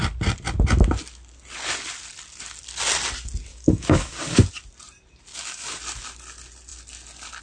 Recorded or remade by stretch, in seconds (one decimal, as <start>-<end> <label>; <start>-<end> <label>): 0.0-3.5 recorded; 3.5-4.5 remade; 4.5-5.3 recorded; 5.3-5.8 remade; 5.8-7.4 recorded